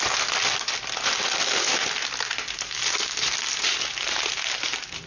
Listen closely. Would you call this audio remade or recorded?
recorded